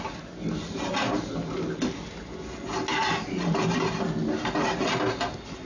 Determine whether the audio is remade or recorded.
recorded